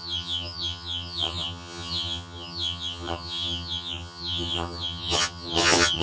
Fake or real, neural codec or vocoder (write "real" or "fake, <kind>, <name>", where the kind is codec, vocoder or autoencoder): fake, vocoder, HiFi-GAN